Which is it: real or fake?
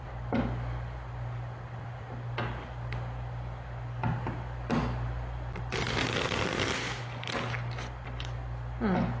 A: real